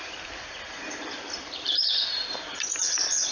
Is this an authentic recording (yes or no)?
no